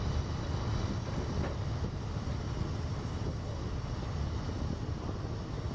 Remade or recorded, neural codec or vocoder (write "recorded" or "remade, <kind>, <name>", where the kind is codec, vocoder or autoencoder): recorded